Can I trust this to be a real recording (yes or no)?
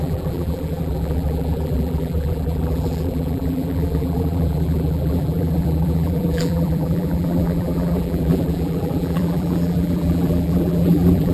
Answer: no